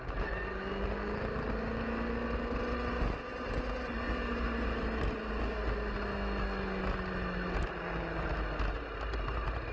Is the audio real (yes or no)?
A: yes